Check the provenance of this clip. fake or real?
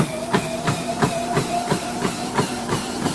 fake